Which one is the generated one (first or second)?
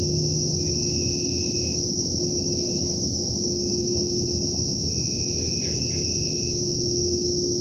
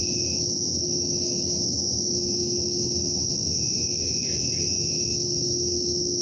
second